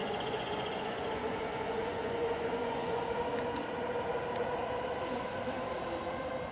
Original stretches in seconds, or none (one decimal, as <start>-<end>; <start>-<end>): 3.0-6.5